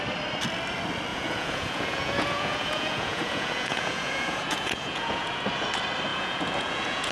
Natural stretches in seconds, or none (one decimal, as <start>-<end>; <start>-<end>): 0.0-1.1; 5.4-6.1